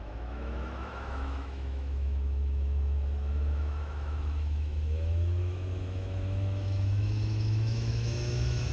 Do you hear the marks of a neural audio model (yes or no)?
yes